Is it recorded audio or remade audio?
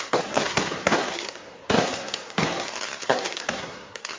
remade